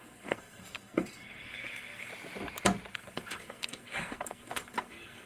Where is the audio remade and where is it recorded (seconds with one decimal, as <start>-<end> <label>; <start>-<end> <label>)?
0.0-2.1 remade; 2.1-2.9 recorded; 2.9-5.3 remade